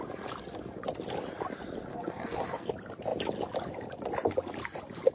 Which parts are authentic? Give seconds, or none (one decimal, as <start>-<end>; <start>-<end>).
0.0-1.9; 2.7-5.1